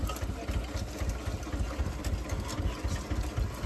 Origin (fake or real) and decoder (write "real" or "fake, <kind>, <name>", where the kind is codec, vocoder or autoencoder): real